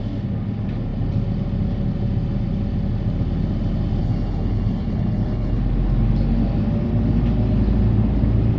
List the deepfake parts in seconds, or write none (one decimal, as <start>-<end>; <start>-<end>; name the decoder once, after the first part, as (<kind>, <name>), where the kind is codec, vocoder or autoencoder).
4.0-5.6 (codec, HILCodec)